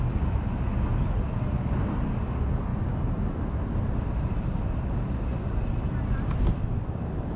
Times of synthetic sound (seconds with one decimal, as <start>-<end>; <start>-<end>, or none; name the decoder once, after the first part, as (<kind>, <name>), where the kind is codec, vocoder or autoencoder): none